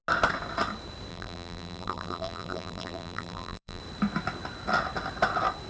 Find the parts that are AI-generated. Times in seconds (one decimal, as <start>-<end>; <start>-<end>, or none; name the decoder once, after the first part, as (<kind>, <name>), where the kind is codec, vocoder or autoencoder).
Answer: 1.1-3.8 (vocoder, BigVGAN v2)